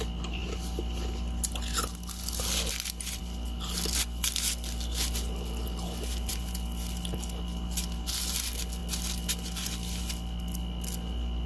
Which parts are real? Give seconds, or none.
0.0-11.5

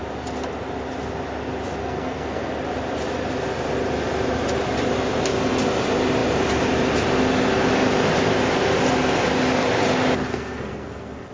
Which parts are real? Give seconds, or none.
0.0-1.8; 2.4-10.3

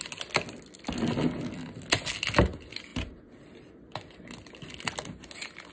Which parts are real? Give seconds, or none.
0.0-5.7

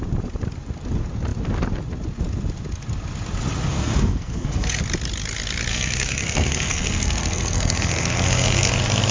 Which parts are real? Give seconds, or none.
0.0-3.7; 4.8-5.7; 8.7-9.1

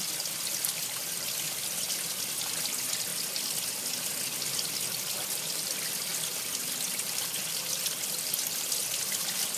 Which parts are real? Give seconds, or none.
0.0-9.6

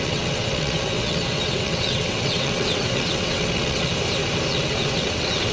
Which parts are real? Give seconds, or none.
3.9-4.5